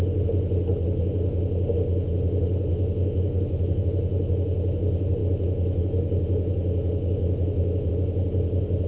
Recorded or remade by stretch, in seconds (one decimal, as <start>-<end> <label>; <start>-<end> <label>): 0.0-2.7 recorded; 2.7-3.8 remade; 3.8-5.2 recorded; 5.2-7.9 remade; 7.9-8.9 recorded